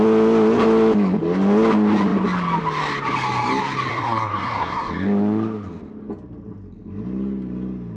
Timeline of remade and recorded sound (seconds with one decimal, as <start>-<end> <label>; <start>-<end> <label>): 0.0-3.9 recorded; 3.9-4.9 remade; 4.9-8.0 recorded